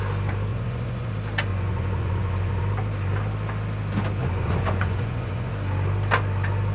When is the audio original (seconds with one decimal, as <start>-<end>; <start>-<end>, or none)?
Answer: 0.0-0.5; 1.1-1.5; 2.6-4.2; 5.5-6.7